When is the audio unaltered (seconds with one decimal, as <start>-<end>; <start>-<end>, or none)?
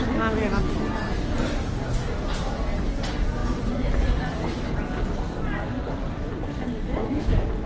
0.0-3.4; 7.2-7.7